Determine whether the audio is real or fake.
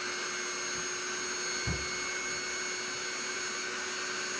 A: real